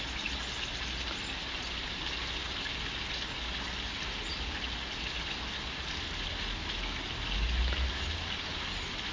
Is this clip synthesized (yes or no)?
no